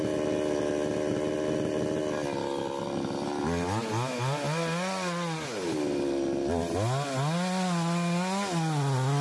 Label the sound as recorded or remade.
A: recorded